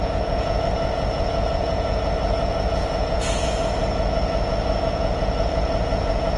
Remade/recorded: remade